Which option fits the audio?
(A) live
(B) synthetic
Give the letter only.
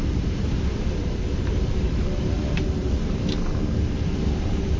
B